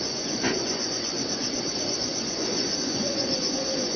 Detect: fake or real fake